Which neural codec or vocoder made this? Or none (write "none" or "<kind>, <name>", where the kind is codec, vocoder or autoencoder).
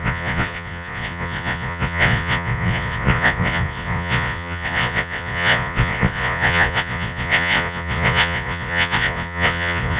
vocoder, Vocos